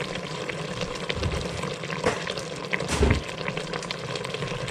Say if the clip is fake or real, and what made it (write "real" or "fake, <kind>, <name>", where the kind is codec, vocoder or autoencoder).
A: real